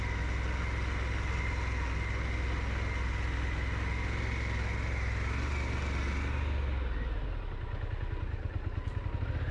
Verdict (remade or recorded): recorded